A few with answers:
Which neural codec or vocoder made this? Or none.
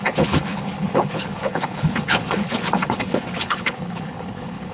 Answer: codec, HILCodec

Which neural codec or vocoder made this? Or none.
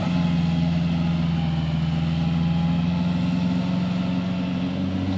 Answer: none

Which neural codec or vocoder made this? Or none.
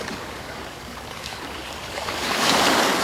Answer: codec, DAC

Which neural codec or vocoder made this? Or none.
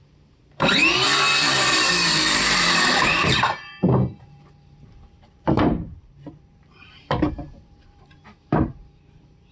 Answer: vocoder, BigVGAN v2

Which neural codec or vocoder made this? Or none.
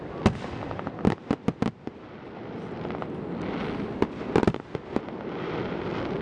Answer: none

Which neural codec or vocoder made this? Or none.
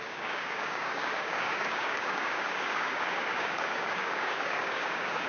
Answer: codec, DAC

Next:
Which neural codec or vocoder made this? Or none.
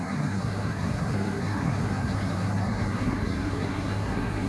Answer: codec, SNAC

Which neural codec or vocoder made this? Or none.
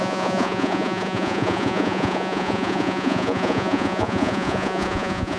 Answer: vocoder, Vocos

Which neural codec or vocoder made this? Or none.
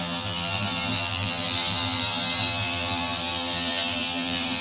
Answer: vocoder, BigVGAN v2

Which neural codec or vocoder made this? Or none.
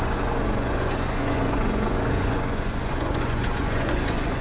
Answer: vocoder, Vocos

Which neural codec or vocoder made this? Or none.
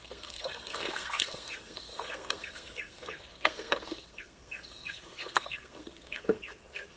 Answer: codec, SNAC